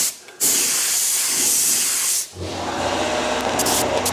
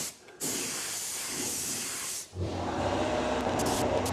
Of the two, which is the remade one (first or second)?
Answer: second